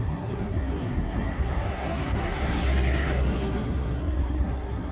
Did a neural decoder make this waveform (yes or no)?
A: yes